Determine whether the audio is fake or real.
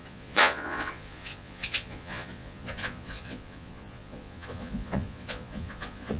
fake